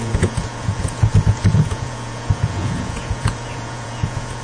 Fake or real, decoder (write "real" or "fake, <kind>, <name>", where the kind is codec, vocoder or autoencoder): fake, vocoder, Vocos